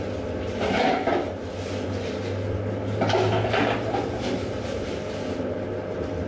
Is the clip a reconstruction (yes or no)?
no